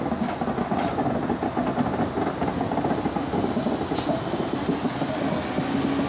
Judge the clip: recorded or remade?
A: recorded